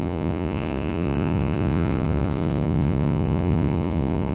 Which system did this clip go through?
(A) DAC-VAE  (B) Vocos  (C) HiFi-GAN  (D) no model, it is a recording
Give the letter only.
B